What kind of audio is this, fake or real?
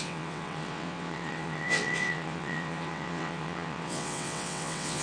fake